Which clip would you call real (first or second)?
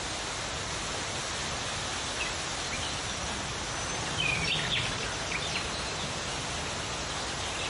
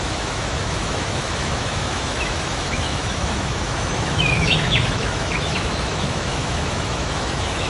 first